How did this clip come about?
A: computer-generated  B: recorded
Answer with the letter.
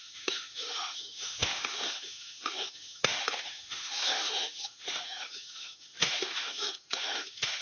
A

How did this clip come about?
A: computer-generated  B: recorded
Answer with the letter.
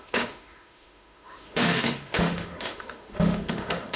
A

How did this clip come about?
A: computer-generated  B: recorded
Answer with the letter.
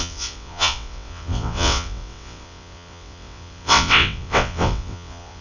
A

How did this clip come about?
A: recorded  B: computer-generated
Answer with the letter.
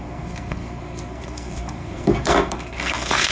B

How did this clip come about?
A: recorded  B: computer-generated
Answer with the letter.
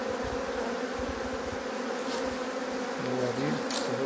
A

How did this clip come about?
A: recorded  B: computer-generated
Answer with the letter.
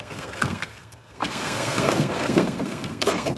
B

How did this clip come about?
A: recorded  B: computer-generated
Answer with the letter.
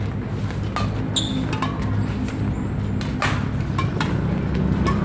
A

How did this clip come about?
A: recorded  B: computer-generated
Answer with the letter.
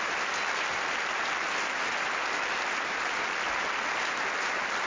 A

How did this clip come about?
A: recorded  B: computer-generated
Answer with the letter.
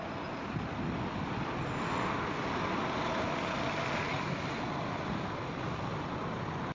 A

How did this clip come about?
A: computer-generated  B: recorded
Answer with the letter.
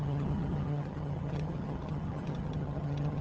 A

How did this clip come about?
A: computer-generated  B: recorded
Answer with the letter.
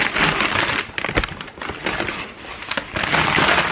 B